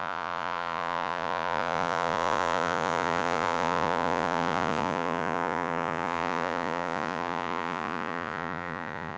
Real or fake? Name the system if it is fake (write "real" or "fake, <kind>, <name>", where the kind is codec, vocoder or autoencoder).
fake, vocoder, Vocos